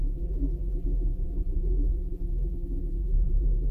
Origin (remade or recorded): remade